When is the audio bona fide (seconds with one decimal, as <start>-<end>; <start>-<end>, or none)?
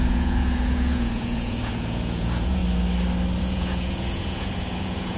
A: 2.6-3.4